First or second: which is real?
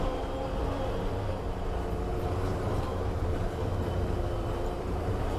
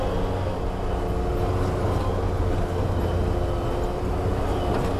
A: second